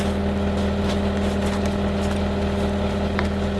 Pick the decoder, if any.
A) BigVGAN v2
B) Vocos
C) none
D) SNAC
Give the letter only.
C